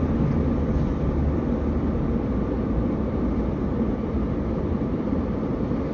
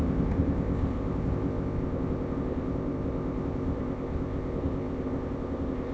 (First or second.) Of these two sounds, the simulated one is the second